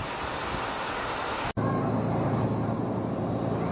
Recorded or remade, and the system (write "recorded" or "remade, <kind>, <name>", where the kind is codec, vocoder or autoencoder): recorded